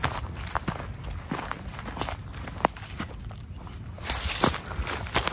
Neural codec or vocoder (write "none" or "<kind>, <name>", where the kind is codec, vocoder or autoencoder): none